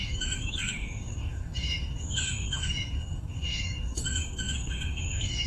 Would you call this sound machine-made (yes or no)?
yes